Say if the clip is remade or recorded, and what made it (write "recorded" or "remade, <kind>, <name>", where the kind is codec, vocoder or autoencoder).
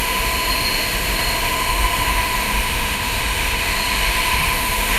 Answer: remade, autoencoder, DAC-VAE